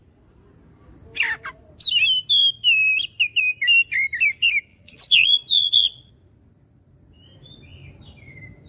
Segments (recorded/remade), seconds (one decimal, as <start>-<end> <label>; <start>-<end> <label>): 0.0-4.7 recorded; 4.7-6.1 remade; 6.1-8.7 recorded